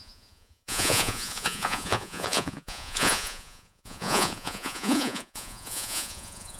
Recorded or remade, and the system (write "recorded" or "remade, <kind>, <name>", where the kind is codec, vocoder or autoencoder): remade, vocoder, Vocos